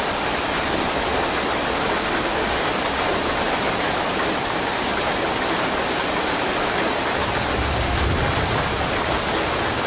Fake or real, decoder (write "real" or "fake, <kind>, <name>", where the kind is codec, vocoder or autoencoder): real